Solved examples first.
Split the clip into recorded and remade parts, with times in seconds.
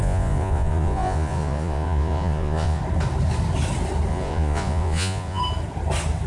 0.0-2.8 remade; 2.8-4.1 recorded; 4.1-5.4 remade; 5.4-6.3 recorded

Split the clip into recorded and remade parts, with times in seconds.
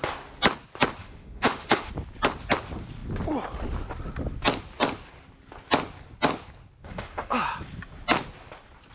0.0-1.0 recorded; 1.0-1.9 remade; 1.9-6.8 recorded; 6.8-7.4 remade; 7.4-8.9 recorded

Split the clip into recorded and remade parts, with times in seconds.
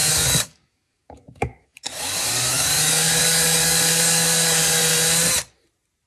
0.0-4.8 remade; 4.8-6.1 recorded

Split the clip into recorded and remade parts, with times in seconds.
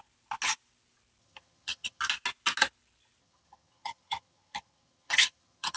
0.0-1.2 recorded; 1.2-2.0 remade; 2.0-3.2 recorded; 3.2-5.8 remade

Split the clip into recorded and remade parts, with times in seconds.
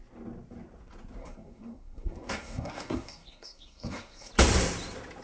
0.0-1.2 recorded; 1.2-4.3 remade; 4.3-5.2 recorded